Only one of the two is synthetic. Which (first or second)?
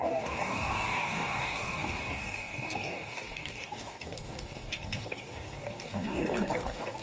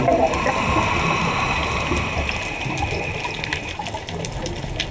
first